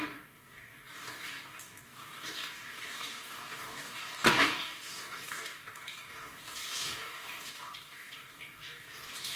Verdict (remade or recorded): remade